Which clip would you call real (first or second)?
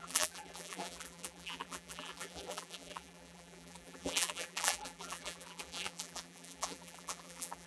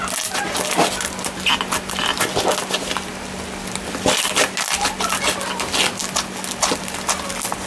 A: second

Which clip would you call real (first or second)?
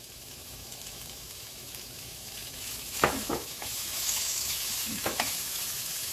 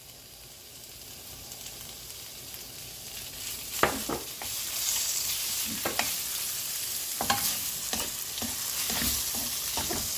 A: second